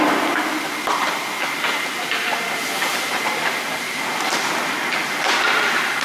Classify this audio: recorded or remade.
recorded